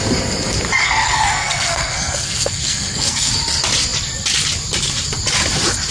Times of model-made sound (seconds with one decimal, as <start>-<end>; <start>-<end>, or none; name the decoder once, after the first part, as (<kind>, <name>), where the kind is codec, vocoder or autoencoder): 0.8-3.3 (codec, SNAC)